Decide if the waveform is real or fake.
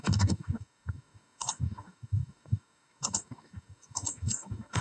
fake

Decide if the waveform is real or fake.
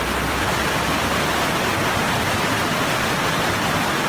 real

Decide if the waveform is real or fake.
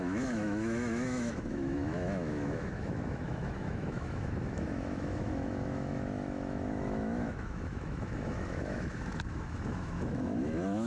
fake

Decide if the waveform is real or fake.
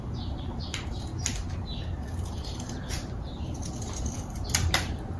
real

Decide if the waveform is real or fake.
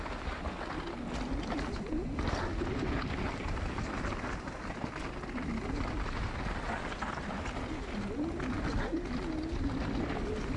real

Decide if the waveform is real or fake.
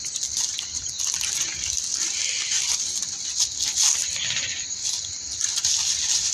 real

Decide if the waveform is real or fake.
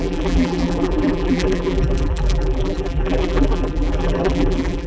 fake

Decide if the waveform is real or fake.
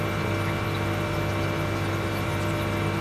real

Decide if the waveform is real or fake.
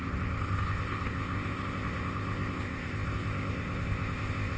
fake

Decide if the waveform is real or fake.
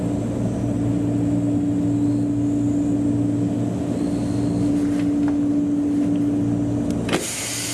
real